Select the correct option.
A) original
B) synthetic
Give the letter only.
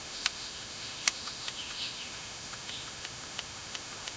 B